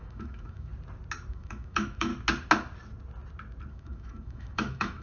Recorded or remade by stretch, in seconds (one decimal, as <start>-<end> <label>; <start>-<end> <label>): 0.0-0.7 remade; 0.7-1.3 recorded; 1.3-2.1 remade; 2.1-3.7 recorded; 3.7-5.0 remade